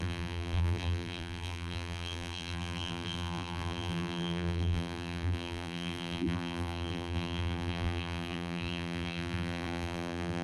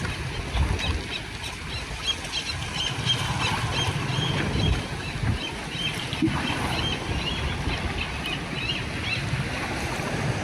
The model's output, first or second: first